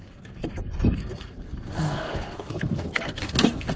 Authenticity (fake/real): fake